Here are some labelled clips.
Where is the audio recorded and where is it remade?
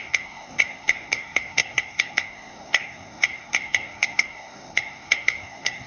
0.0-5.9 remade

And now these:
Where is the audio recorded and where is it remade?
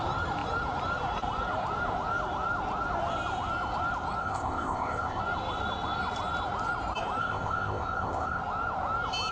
0.0-4.2 recorded; 4.2-5.2 remade; 5.2-7.2 recorded; 7.2-8.4 remade; 8.4-9.3 recorded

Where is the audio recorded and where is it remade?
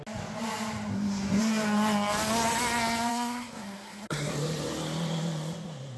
0.0-0.9 recorded; 0.9-1.4 remade; 1.4-3.1 recorded; 3.1-4.3 remade; 4.3-6.0 recorded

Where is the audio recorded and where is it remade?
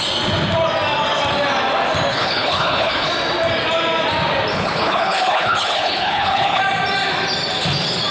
0.0-2.1 recorded; 2.1-3.1 remade; 3.1-4.5 recorded; 4.5-6.6 remade; 6.6-8.1 recorded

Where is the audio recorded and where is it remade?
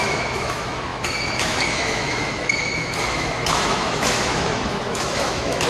0.0-5.7 remade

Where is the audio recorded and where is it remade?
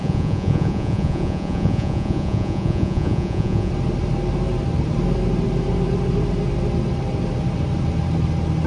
0.0-3.7 remade; 3.7-8.7 recorded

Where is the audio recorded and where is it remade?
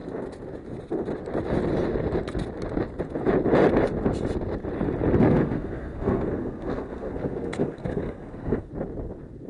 0.0-5.2 recorded; 5.2-8.7 remade; 8.7-9.5 recorded